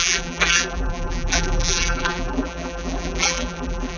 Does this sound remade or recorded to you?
remade